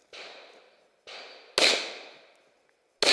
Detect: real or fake real